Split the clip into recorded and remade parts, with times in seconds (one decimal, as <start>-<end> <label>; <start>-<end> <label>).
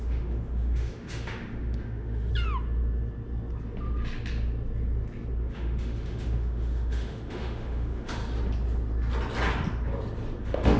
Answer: 0.0-2.3 remade; 2.3-5.4 recorded; 5.4-8.2 remade; 8.2-10.4 recorded; 10.4-10.8 remade